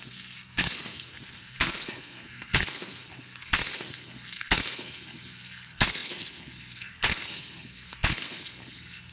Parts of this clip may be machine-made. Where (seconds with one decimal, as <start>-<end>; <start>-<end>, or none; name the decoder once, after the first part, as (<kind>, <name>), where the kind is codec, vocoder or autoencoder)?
0.0-9.1 (codec, SNAC)